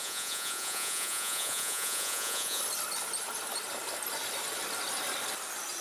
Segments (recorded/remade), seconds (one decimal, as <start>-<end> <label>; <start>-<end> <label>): 0.0-2.6 remade; 2.6-5.8 recorded